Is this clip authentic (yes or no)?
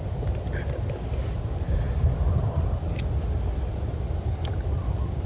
yes